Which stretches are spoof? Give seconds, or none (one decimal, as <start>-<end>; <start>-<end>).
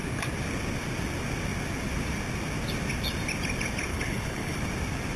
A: 3.9-4.6